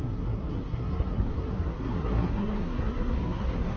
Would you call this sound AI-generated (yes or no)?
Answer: yes